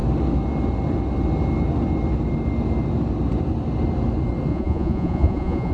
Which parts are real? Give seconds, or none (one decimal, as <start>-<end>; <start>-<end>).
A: 0.0-4.5